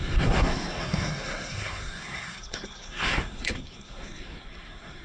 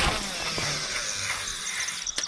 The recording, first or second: second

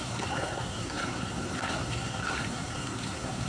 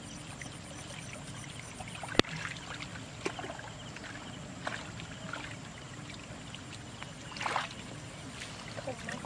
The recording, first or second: second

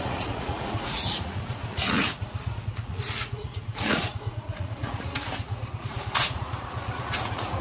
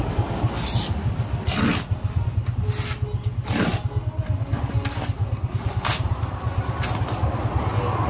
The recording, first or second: second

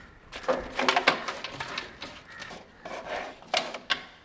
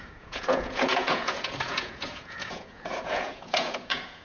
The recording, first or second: first